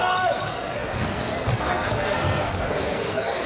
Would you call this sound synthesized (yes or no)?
yes